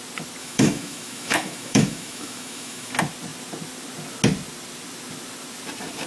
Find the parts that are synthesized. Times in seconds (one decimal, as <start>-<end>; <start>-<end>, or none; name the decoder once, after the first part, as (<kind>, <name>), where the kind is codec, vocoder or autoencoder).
0.4-2.9 (autoencoder, DAC-VAE)